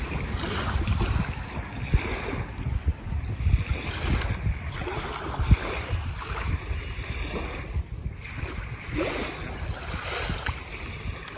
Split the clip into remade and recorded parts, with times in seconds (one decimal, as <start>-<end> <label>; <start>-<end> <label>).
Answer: 0.0-11.4 recorded